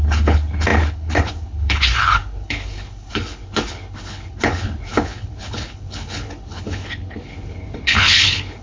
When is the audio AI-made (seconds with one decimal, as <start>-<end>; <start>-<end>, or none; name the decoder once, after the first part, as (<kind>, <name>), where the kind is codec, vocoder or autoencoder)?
0.0-8.6 (codec, HILCodec)